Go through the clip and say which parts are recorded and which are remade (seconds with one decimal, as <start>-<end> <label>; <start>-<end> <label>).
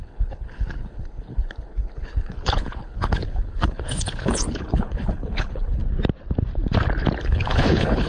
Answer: 0.0-5.8 remade; 5.8-7.2 recorded; 7.2-8.1 remade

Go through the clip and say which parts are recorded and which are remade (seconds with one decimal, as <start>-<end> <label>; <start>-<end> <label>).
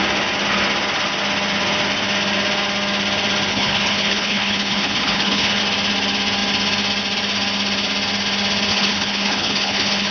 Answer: 0.0-3.5 recorded; 3.5-5.6 remade; 5.6-8.7 recorded; 8.7-10.1 remade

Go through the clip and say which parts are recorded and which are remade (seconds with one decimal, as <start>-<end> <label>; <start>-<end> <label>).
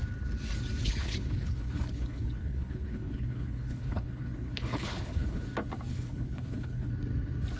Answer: 0.0-0.8 recorded; 0.8-5.4 remade; 5.4-5.9 recorded; 5.9-6.9 remade; 6.9-7.6 recorded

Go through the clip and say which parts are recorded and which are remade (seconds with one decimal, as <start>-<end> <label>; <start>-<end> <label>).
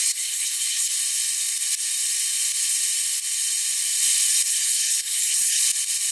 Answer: 0.0-0.9 remade; 0.9-4.5 recorded; 4.5-5.6 remade; 5.6-6.1 recorded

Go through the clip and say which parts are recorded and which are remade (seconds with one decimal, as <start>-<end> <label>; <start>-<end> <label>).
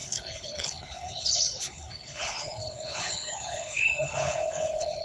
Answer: 0.0-5.0 remade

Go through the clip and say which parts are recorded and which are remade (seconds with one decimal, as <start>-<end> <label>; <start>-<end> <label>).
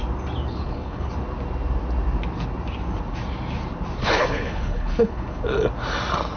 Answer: 0.0-0.5 recorded; 0.5-1.1 remade; 1.1-4.0 recorded; 4.0-5.4 remade; 5.4-6.4 recorded